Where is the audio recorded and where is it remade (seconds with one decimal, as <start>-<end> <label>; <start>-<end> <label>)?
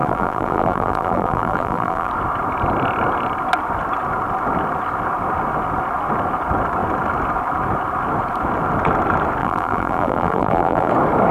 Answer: 0.0-2.1 remade; 2.1-9.4 recorded; 9.4-10.9 remade; 10.9-11.3 recorded